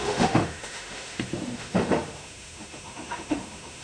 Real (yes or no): no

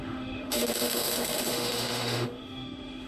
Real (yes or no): no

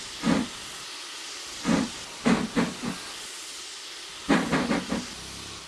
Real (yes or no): yes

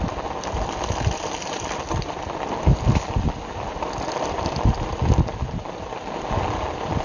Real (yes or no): yes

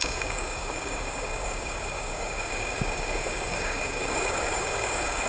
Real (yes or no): no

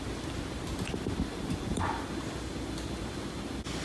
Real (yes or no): yes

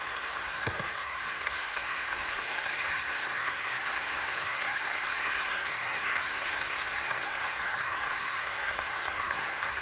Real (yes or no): no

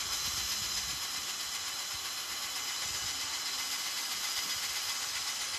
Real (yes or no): yes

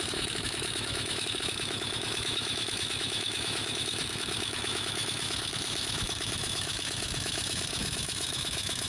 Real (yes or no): no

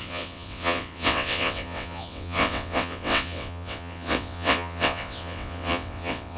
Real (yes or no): no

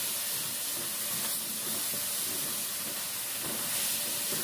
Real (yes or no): yes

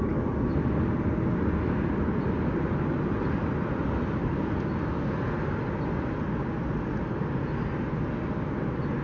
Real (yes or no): yes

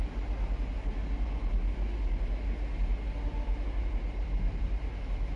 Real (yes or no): yes